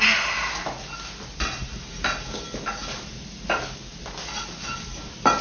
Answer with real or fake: real